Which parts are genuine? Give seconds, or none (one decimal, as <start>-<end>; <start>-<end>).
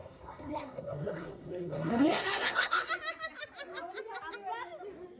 2.9-5.2